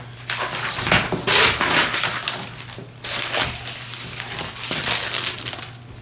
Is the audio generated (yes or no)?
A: no